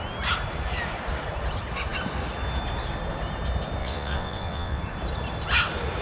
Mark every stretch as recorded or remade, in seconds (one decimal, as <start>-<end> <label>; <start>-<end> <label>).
0.0-3.8 recorded; 3.8-4.8 remade; 4.8-6.0 recorded